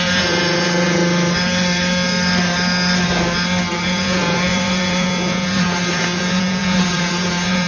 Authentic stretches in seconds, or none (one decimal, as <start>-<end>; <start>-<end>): 1.0-3.7